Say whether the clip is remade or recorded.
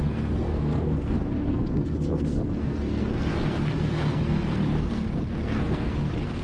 remade